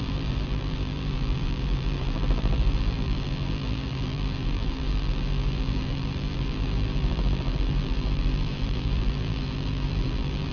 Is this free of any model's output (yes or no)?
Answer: no